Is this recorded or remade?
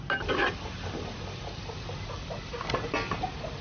recorded